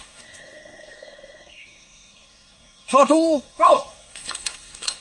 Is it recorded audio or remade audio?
remade